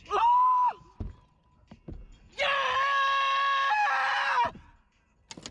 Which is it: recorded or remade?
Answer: recorded